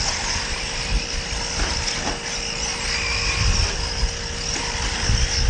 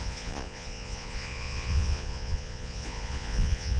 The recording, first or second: first